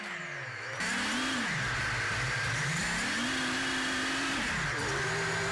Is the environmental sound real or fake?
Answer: real